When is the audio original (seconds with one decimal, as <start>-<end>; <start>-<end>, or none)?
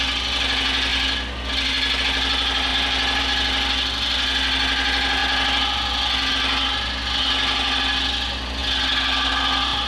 0.0-9.9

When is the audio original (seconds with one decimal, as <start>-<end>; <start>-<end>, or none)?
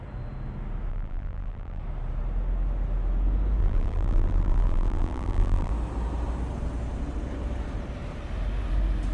0.0-0.9; 1.8-3.6; 5.7-9.1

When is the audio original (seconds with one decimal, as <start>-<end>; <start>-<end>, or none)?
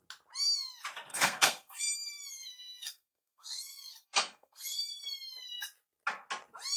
0.0-1.1; 1.8-2.3; 4.8-6.8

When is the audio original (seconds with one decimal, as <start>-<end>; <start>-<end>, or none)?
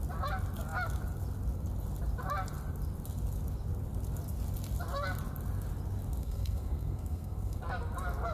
0.0-6.2; 7.6-8.3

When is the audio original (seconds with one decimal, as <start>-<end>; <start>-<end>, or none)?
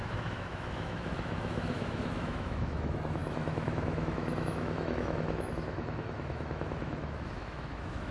none